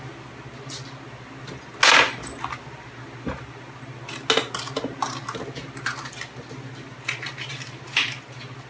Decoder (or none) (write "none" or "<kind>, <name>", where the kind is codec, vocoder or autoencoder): none